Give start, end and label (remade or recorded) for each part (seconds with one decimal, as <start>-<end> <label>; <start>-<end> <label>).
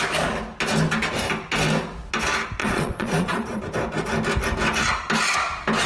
0.0-2.6 recorded; 2.6-3.6 remade; 3.6-5.9 recorded